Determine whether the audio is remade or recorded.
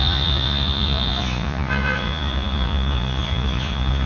remade